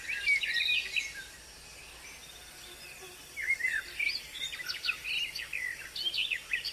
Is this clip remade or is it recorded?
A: recorded